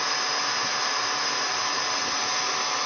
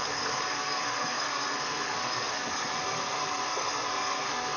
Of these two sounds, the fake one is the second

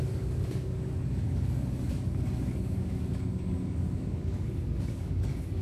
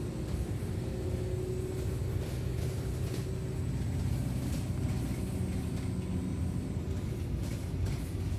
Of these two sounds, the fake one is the first